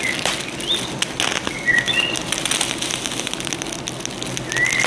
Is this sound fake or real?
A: real